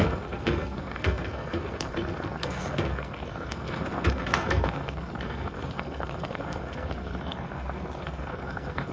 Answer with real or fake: fake